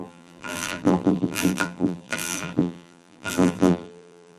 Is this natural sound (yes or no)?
no